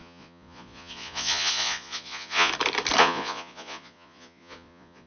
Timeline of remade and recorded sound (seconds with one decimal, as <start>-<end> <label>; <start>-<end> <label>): 0.0-2.5 remade; 2.5-3.0 recorded; 3.0-5.1 remade